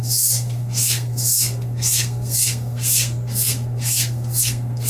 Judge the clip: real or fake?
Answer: fake